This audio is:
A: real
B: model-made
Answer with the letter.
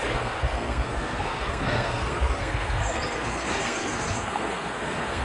B